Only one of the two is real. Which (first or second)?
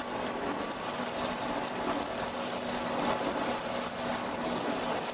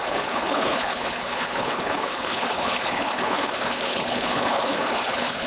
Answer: first